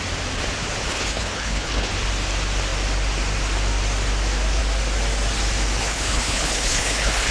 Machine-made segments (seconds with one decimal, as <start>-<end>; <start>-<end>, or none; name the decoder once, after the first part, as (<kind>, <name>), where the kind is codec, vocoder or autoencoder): 0.9-1.9 (codec, HILCodec); 5.8-7.3